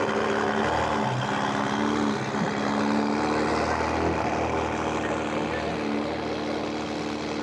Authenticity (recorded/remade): recorded